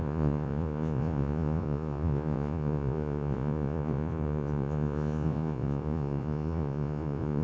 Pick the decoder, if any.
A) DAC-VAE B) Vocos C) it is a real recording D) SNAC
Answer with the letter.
B